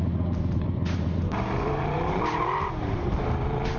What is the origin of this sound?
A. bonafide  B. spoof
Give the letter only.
B